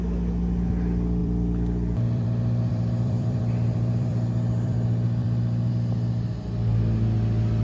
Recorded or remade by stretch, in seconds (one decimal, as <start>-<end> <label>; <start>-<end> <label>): 0.0-1.2 recorded; 1.2-5.7 remade; 5.7-7.6 recorded